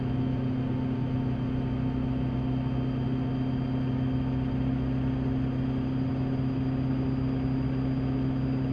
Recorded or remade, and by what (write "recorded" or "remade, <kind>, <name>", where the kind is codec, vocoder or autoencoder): recorded